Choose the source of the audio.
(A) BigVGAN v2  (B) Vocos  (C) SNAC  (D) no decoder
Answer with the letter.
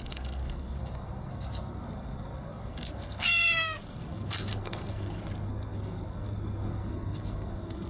C